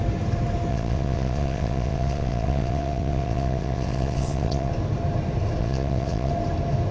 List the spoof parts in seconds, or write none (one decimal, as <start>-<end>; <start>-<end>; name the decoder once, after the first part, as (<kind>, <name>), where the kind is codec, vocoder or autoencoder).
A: 0.7-4.7 (vocoder, WaveNeXt); 5.6-6.3